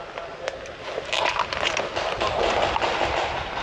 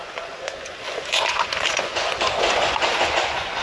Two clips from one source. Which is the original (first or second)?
first